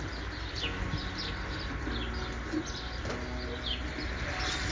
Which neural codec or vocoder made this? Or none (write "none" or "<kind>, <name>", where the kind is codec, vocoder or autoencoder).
none